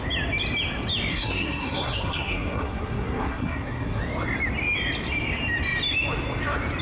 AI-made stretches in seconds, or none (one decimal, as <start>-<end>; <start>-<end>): 1.1-4.0